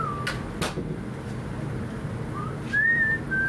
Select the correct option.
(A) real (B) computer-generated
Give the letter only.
A